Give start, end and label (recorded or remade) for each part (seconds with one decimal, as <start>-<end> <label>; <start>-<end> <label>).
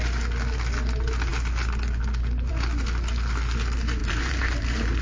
0.0-4.0 recorded; 4.0-5.0 remade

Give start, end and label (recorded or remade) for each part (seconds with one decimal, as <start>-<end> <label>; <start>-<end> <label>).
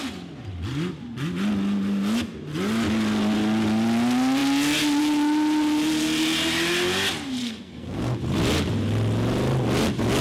0.0-7.4 recorded; 7.4-8.2 remade; 8.2-10.2 recorded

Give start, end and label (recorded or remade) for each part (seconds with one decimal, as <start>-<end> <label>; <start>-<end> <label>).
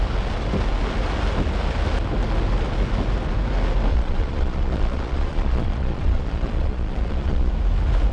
0.0-3.9 recorded; 3.9-7.5 remade; 7.5-8.1 recorded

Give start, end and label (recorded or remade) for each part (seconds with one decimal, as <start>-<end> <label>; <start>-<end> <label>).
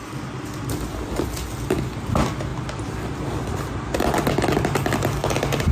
0.0-5.7 recorded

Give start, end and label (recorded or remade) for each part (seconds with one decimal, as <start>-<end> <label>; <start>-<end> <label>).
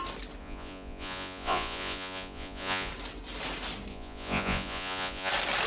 0.0-0.4 recorded; 0.4-2.9 remade; 2.9-3.9 recorded; 3.9-5.3 remade; 5.3-5.7 recorded